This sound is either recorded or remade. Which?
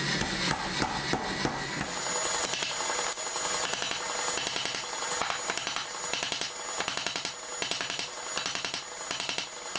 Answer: recorded